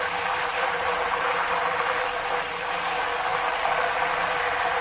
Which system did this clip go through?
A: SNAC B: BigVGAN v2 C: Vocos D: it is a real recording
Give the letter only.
D